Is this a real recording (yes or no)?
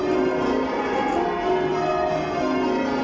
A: yes